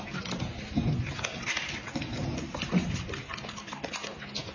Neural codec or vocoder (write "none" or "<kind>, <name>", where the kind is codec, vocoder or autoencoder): none